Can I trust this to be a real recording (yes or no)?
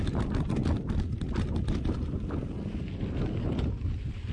yes